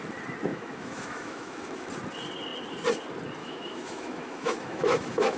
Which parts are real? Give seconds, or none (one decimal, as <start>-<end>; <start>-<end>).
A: 0.0-0.5; 1.9-3.4